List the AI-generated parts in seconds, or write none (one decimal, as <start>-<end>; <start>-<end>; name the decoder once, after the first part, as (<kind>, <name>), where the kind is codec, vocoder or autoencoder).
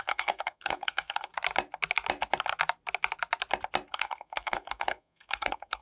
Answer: 0.0-1.3 (codec, SNAC); 3.9-5.8